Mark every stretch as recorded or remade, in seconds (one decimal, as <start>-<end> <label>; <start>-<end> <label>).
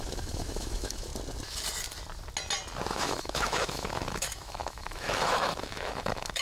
0.0-1.1 remade; 1.1-2.9 recorded; 2.9-6.4 remade